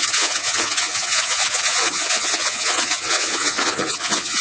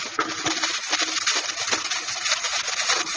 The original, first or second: second